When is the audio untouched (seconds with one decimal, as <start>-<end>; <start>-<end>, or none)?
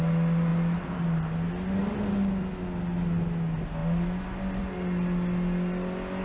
0.0-6.2